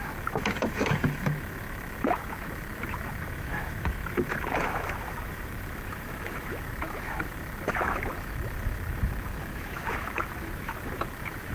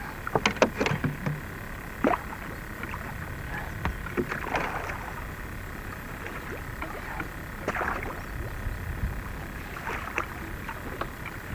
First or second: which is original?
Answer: second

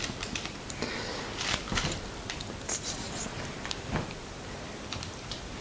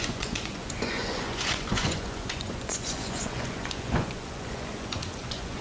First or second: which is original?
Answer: first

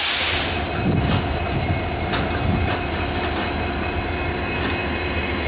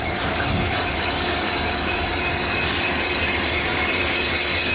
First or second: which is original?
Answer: first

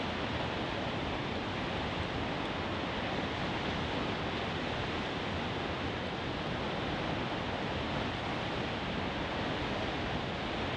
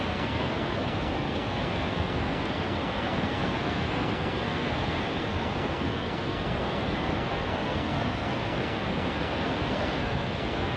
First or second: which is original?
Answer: first